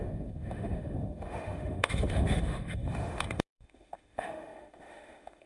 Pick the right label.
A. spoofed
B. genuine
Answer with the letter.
A